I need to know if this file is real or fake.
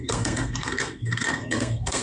fake